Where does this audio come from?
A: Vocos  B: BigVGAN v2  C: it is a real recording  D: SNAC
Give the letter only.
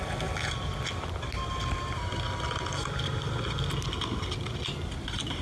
C